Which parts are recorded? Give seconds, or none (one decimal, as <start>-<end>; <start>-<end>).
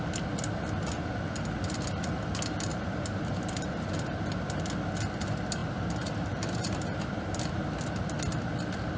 0.0-2.7; 3.9-5.6; 7.8-9.0